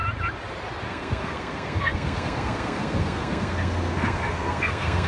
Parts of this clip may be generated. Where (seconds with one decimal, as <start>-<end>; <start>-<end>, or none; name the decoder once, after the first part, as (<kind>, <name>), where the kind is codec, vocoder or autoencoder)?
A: 0.9-5.1 (codec, SNAC)